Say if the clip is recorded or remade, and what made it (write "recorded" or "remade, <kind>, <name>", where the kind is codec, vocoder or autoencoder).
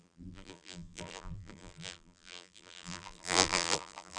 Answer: remade, vocoder, BigVGAN v2